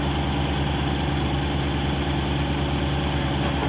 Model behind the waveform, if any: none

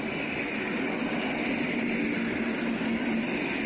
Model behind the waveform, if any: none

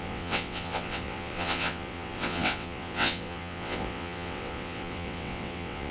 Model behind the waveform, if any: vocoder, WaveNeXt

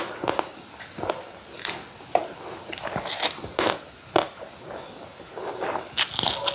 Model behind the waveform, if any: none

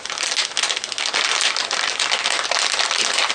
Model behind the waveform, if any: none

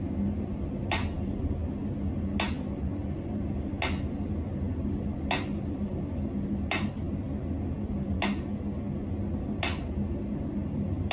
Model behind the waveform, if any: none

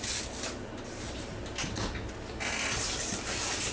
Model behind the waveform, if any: none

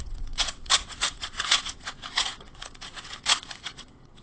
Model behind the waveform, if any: vocoder, WaveNeXt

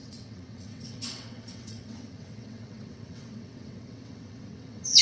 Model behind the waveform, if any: vocoder, WaveNeXt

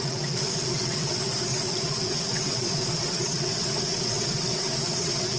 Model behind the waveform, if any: vocoder, WaveNeXt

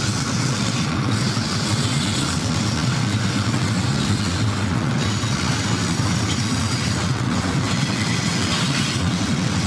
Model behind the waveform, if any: vocoder, WaveNeXt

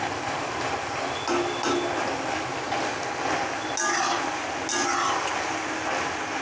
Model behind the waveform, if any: none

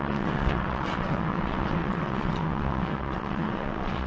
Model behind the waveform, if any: vocoder, WaveNeXt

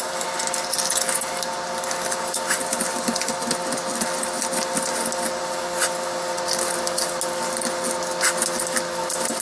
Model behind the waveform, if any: none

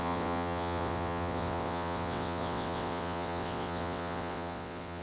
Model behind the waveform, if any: vocoder, WaveNeXt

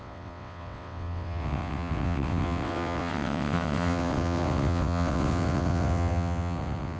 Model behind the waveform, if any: vocoder, WaveNeXt